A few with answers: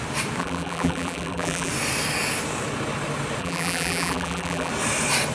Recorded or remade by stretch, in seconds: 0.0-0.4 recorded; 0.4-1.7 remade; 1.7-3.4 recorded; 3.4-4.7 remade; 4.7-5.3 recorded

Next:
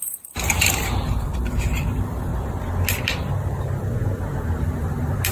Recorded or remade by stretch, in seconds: 0.0-1.3 remade; 1.3-1.8 recorded; 1.8-2.3 remade; 2.3-4.6 recorded; 4.6-5.3 remade

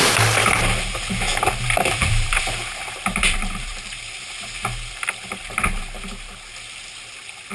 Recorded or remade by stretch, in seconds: 0.0-1.3 recorded; 1.3-5.8 remade; 5.8-7.5 recorded

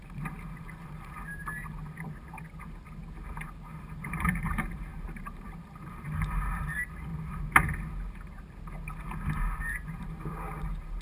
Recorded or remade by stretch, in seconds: 0.0-1.3 remade; 1.3-3.4 recorded; 3.4-7.1 remade; 7.1-9.3 recorded; 9.3-11.0 remade

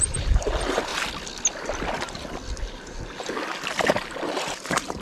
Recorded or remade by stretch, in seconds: 0.0-0.9 remade; 0.9-3.9 recorded; 3.9-5.0 remade

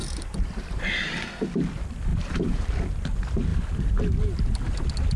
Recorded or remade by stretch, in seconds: 0.0-1.3 remade; 1.3-2.1 recorded; 2.1-2.7 remade; 2.7-5.2 recorded

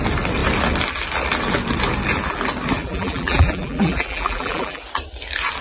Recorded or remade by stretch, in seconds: 0.0-2.8 recorded; 2.8-4.8 remade; 4.8-5.6 recorded

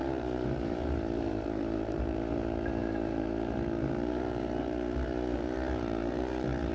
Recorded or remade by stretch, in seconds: 0.0-6.7 remade